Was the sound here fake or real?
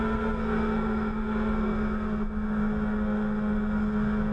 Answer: fake